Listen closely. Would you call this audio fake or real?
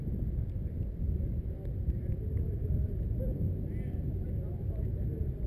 real